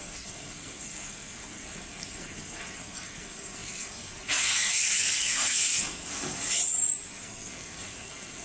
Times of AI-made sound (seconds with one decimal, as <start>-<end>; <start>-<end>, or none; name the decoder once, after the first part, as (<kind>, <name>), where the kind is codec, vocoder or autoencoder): 0.0-6.6 (codec, SNAC); 7.1-8.4